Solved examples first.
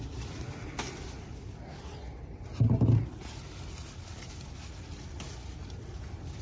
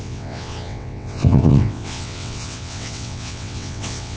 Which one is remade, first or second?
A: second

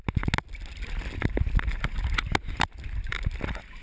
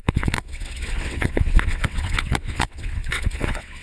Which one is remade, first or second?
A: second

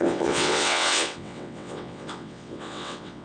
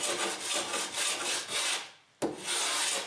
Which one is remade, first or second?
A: first